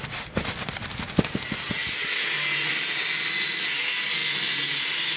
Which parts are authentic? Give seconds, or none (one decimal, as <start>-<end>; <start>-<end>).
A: 0.0-5.2

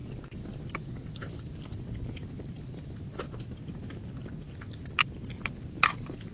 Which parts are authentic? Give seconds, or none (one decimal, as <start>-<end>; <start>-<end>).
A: 0.0-6.3